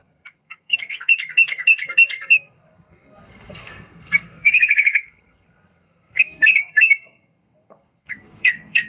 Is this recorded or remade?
remade